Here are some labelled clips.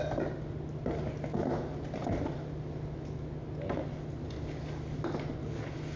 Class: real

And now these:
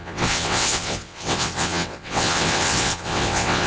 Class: fake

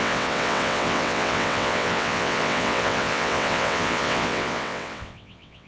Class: fake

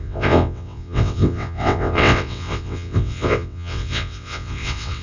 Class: fake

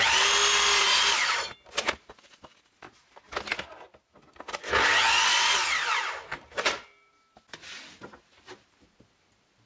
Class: real